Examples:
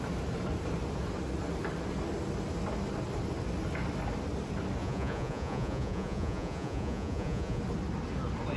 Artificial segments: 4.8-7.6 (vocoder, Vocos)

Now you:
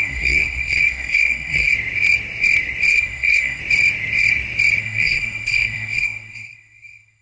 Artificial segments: 0.0-1.7 (codec, SNAC); 2.9-3.6; 4.8-7.2

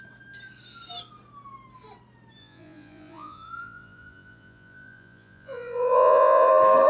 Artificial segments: 2.4-6.5 (vocoder, Vocos)

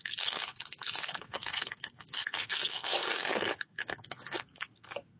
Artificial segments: 0.0-5.2 (codec, SNAC)

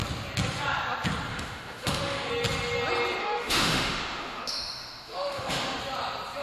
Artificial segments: 1.3-2.3 (autoencoder, DAC-VAE); 3.2-5.8

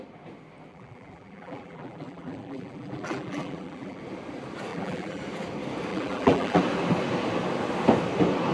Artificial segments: 0.7-4.0 (vocoder, BigVGAN v2); 4.7-5.2; 5.9-6.6

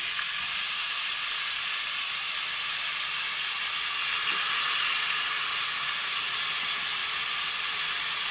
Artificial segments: none